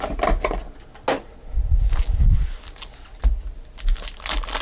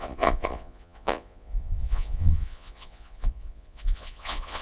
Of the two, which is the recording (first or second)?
first